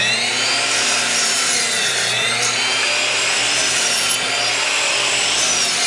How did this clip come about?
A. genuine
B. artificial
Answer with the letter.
A